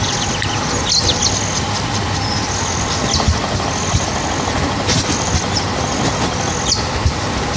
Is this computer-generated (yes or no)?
no